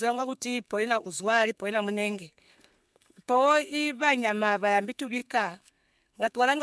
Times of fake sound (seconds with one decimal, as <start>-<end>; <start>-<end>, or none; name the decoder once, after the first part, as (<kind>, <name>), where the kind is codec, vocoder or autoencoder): 0.0-6.6 (codec, SNAC)